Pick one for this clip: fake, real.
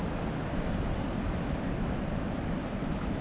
real